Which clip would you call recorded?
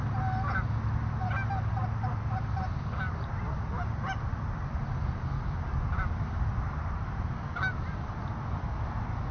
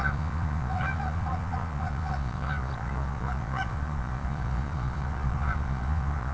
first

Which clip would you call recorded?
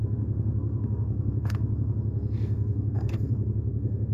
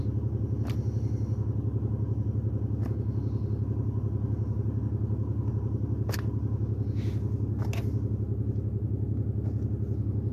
second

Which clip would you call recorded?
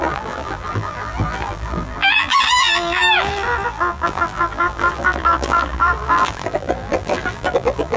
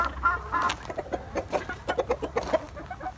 second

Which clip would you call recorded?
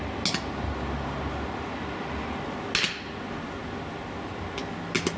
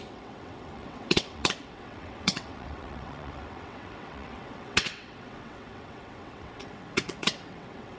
first